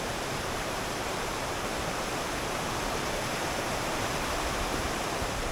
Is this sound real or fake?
fake